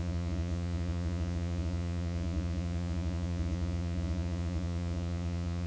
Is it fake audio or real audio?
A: fake